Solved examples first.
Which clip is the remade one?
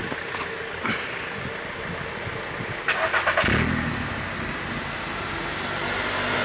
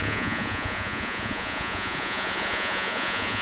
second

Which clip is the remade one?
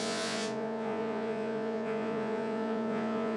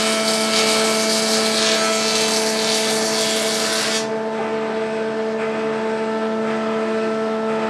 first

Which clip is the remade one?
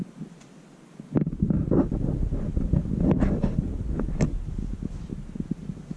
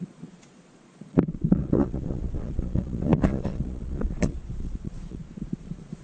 second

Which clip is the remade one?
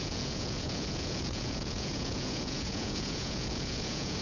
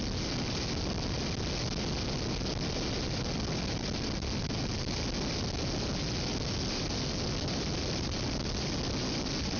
first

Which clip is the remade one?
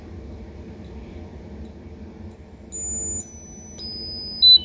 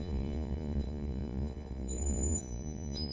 second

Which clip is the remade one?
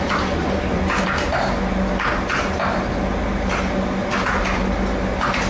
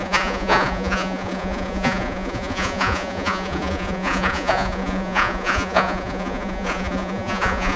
second